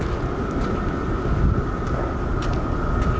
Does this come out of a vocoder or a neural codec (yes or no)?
no